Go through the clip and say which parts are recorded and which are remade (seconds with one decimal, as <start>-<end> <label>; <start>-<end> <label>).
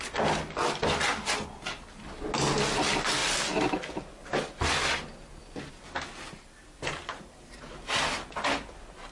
0.0-9.1 recorded